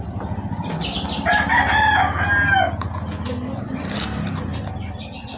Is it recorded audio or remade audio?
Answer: recorded